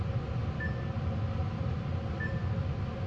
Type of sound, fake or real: real